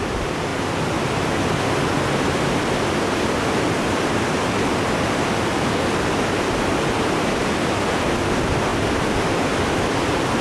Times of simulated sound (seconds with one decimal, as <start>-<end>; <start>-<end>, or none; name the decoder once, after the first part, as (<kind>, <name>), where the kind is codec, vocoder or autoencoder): none